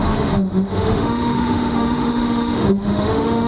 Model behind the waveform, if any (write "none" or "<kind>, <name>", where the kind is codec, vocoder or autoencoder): autoencoder, DAC-VAE